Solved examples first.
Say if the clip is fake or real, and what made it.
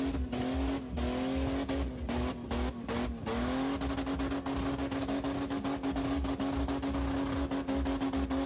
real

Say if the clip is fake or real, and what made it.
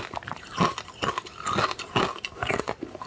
real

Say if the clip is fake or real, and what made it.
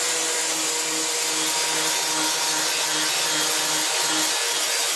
real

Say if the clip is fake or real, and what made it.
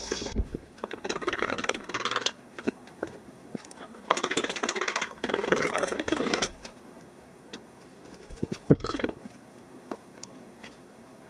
fake, codec, SNAC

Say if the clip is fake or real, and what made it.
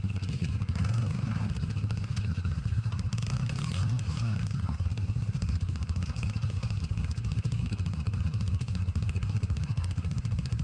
fake, codec, SNAC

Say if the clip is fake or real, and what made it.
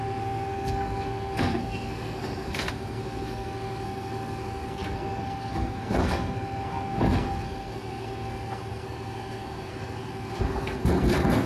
fake, codec, SNAC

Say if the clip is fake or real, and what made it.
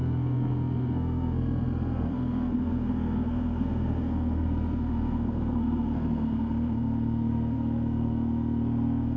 fake, codec, SNAC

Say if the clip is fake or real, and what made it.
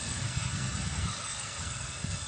fake, codec, SNAC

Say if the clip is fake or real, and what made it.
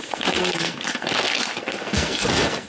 fake, codec, SNAC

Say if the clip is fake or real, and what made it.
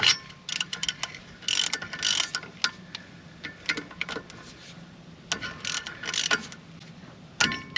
real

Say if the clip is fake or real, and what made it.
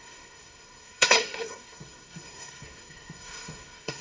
fake, codec, SNAC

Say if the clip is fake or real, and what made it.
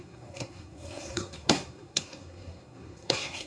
fake, codec, SNAC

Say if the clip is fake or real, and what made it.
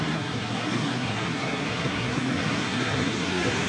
fake, codec, SNAC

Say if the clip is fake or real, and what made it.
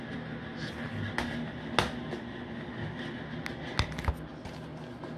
real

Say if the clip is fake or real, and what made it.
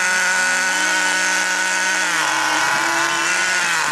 real